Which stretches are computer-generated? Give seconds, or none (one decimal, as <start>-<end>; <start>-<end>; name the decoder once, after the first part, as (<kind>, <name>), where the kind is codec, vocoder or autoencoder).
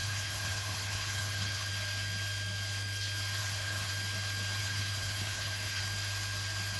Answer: 0.0-1.7 (codec, HILCodec); 3.4-3.9; 4.6-5.8